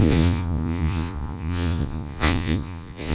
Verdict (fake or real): fake